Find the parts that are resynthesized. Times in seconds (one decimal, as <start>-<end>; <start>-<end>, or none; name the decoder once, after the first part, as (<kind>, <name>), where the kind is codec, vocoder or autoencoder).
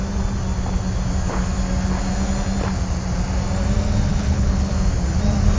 4.1-4.7 (codec, HILCodec)